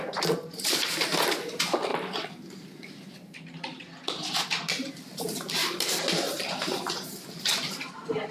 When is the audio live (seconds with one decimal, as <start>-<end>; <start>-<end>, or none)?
0.0-8.3